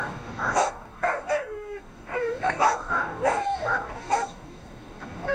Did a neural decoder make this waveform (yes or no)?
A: yes